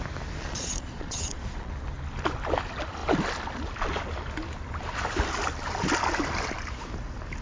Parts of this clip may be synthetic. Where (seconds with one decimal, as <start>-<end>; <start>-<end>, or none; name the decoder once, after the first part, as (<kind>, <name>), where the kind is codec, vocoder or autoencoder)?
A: 0.4-1.7 (vocoder, Vocos)